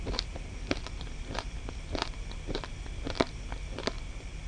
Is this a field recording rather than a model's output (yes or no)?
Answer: no